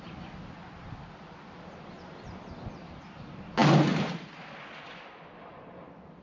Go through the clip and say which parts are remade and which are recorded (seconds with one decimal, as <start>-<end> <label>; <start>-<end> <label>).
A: 0.0-6.2 recorded